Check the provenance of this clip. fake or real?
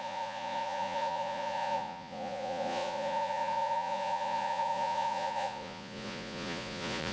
fake